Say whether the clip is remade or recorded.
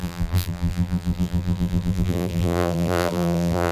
remade